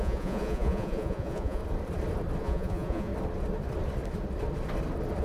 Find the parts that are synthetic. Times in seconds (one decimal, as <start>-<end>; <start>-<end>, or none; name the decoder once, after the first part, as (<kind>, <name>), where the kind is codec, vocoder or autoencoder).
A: 0.0-1.6 (vocoder, Vocos); 2.4-3.1